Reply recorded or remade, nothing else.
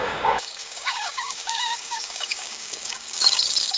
remade